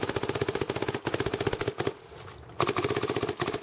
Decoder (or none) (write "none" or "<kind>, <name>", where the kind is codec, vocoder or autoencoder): none